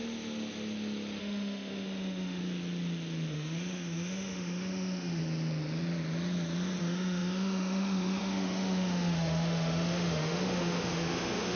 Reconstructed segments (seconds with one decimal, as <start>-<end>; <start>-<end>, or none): 1.2-2.4; 3.3-5.2; 6.8-11.6